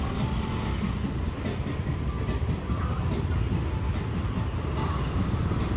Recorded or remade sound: recorded